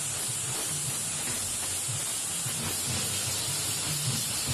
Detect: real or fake real